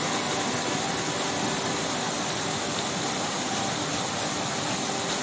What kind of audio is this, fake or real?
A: real